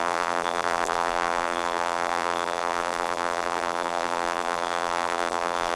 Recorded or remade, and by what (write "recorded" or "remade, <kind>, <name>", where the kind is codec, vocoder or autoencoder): remade, vocoder, BigVGAN v2